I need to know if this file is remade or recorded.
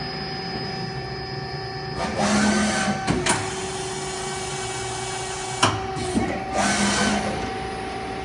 recorded